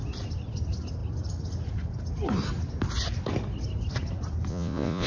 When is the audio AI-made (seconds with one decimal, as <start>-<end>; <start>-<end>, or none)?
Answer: 4.5-5.1